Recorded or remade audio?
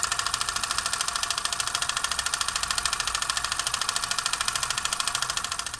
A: recorded